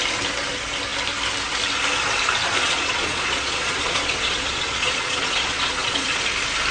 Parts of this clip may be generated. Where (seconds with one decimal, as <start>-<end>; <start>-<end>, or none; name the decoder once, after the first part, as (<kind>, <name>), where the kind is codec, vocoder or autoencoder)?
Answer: 2.4-6.2 (vocoder, Vocos)